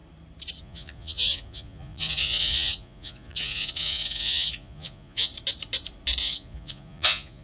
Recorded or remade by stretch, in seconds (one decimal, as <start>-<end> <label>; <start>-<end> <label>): 0.0-0.6 recorded; 0.6-5.3 remade; 5.3-6.2 recorded; 6.2-7.4 remade

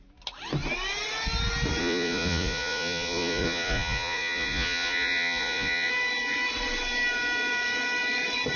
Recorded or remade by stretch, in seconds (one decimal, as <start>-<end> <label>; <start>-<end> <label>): 0.0-1.8 recorded; 1.8-5.9 remade; 5.9-8.6 recorded

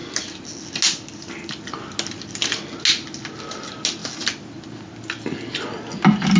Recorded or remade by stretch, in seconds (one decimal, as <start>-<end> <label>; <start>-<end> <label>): 0.0-6.4 recorded